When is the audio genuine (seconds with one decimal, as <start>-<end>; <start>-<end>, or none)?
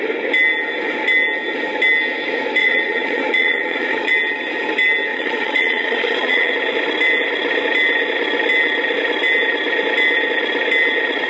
0.0-2.6; 4.1-5.1; 6.5-11.3